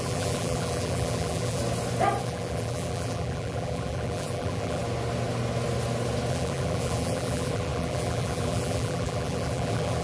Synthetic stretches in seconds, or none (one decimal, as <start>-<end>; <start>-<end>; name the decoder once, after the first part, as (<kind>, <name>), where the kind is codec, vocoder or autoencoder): 0.0-1.6 (vocoder, BigVGAN v2); 2.2-4.8; 6.3-10.0